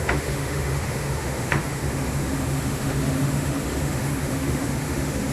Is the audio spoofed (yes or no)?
yes